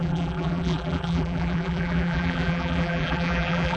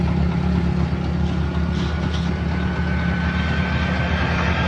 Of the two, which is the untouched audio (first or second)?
second